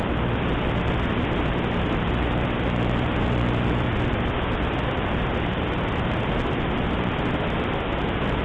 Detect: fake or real real